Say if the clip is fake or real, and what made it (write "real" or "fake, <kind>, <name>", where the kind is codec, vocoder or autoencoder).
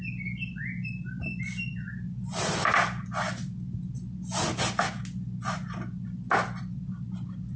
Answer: real